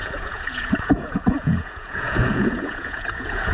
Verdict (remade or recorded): remade